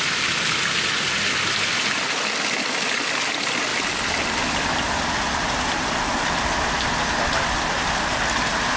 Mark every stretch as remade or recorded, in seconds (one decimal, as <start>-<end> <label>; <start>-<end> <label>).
0.0-8.8 recorded

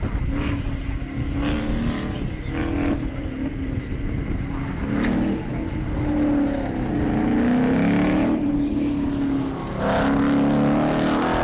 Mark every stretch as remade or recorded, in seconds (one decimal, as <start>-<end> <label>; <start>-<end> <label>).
0.0-11.4 recorded

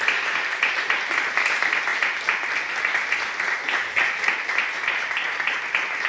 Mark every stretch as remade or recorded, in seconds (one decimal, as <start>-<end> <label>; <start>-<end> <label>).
0.0-6.1 recorded

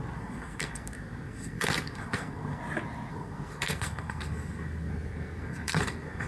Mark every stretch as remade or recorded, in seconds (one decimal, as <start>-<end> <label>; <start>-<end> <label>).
0.0-2.6 remade; 2.6-3.1 recorded; 3.1-6.3 remade

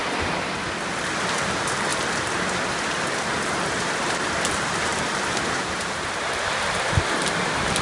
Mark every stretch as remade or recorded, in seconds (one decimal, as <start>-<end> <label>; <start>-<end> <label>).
0.0-1.4 recorded; 1.4-1.9 remade; 1.9-3.3 recorded; 3.3-7.8 remade